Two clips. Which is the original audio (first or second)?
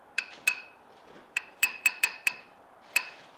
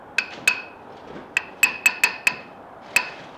second